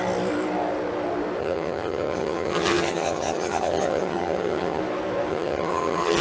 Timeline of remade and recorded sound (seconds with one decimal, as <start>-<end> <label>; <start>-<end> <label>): 0.0-1.4 recorded; 1.4-4.8 remade; 4.8-5.3 recorded; 5.3-6.2 remade